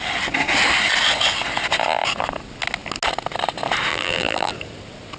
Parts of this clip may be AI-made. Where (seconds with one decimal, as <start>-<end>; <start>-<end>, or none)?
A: 3.9-4.5